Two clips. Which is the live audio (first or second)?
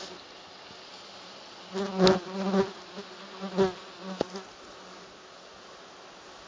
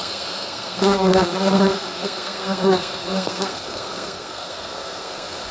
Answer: first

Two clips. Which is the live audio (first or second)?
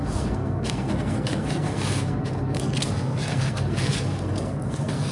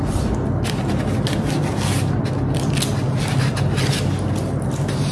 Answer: second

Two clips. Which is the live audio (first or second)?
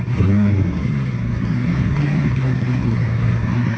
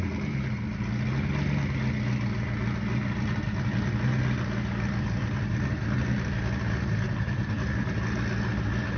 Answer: second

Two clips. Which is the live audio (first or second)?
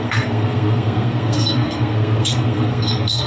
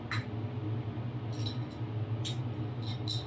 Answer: second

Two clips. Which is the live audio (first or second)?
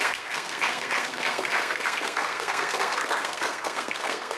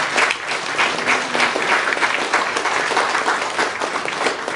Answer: second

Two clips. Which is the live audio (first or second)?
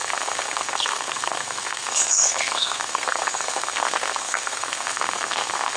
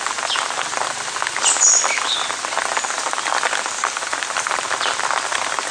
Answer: second